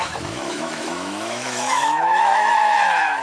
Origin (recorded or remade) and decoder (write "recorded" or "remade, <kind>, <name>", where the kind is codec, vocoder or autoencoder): remade, autoencoder, DAC-VAE